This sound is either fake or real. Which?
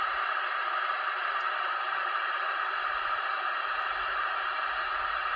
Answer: fake